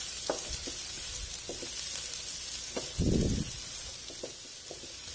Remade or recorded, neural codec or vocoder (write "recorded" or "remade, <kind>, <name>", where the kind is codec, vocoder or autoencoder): recorded